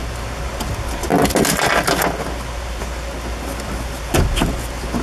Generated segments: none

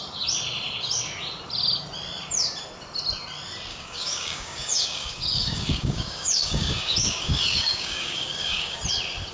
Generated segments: 3.7-8.8 (codec, DAC)